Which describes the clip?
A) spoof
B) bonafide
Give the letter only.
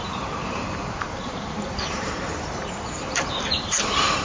A